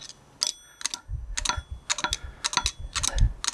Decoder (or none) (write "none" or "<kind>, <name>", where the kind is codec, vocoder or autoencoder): none